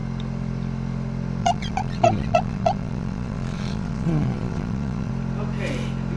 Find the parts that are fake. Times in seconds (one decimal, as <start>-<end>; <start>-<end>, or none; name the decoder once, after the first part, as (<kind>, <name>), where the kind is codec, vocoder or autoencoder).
1.4-5.1 (vocoder, Vocos)